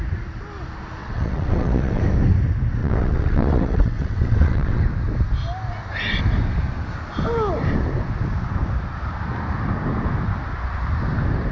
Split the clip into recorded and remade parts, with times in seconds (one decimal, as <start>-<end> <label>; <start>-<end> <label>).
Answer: 0.0-1.0 recorded; 1.0-2.0 remade; 2.0-2.8 recorded; 2.8-4.8 remade; 4.8-11.5 recorded